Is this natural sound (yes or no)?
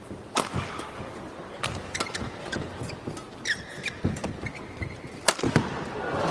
yes